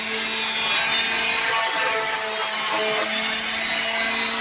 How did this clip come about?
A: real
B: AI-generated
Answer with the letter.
A